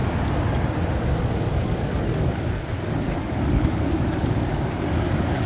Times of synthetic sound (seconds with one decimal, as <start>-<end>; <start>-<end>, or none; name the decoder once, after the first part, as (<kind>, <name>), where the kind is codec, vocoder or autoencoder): 1.2-5.5 (codec, DAC)